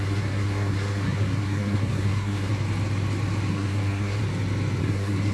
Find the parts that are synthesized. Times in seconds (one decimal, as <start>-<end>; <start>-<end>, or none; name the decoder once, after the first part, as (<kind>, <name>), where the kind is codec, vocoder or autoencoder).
0.0-2.5 (codec, SNAC); 3.5-4.2; 4.8-5.3